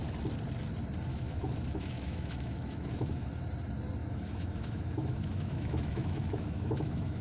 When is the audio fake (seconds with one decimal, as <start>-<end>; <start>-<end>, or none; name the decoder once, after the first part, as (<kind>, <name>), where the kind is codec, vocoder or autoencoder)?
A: 1.1-3.3 (autoencoder, DAC-VAE); 4.0-7.2